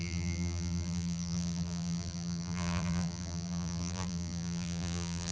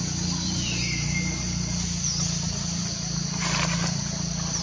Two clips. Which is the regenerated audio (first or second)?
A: first